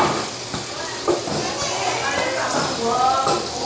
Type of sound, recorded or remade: recorded